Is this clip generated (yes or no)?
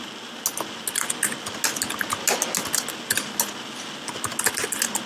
no